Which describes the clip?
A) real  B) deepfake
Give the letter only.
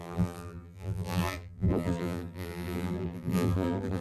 B